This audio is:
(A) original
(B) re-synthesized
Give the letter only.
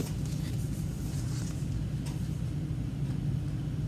A